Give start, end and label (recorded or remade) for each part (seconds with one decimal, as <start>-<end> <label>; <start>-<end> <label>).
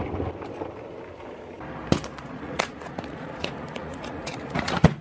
0.0-2.2 recorded; 2.2-5.0 remade